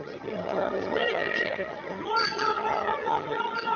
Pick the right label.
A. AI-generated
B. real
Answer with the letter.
A